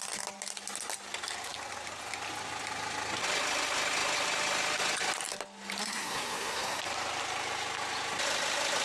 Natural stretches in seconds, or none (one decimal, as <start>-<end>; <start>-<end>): 0.0-5.8; 6.8-8.8

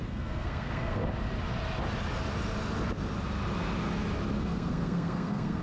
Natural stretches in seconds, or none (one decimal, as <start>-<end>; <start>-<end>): 1.0-4.4

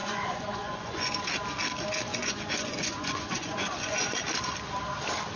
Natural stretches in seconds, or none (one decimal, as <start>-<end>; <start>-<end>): 1.1-2.1; 4.1-5.4

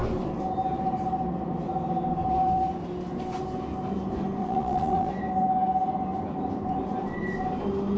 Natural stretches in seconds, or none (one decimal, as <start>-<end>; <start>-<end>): 0.0-4.4; 5.1-8.0